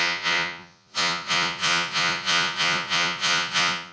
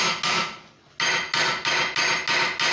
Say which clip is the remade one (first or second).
first